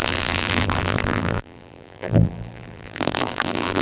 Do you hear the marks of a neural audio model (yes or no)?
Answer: yes